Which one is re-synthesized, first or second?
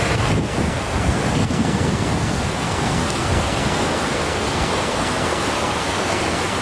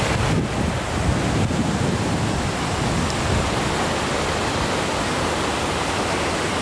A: first